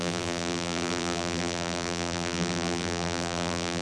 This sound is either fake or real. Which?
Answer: fake